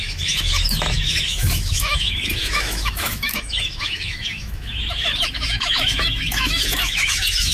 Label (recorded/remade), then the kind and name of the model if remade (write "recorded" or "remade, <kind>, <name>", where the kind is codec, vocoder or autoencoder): remade, autoencoder, DAC-VAE